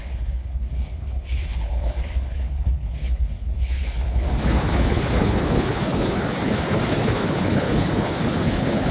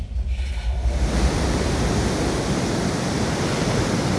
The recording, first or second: second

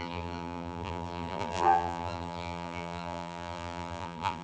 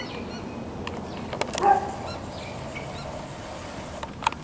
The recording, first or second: second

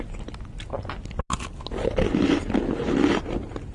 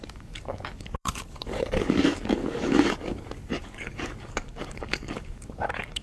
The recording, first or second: first